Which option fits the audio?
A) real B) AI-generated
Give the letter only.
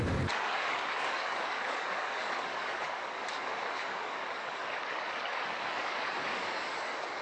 B